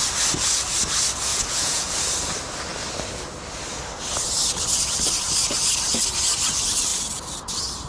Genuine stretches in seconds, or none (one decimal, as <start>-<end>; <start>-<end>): 0.0-1.3; 1.9-7.9